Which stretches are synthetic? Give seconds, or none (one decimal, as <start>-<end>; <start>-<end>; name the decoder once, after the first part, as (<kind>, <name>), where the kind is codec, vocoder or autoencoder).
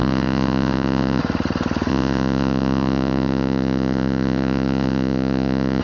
0.0-1.2 (vocoder, Vocos); 1.9-5.8